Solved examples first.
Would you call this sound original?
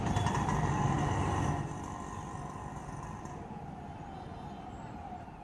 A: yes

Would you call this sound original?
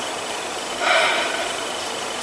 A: no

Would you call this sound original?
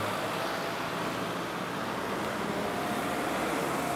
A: yes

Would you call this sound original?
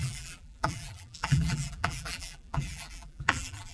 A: no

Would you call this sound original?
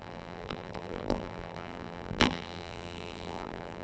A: no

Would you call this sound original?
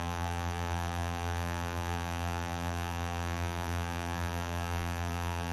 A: no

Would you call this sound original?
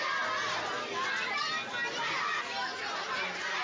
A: yes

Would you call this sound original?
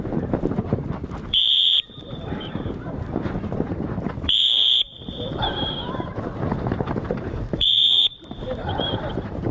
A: no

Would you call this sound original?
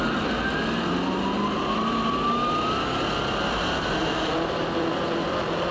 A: yes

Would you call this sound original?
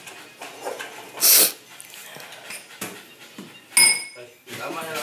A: yes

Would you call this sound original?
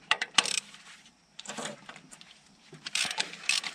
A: no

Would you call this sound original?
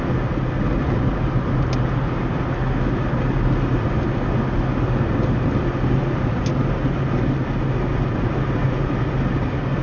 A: yes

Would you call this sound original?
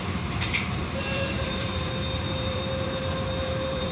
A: no